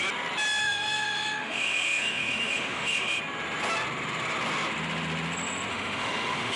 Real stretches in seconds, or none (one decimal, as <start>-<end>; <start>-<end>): 0.0-0.6; 3.2-5.7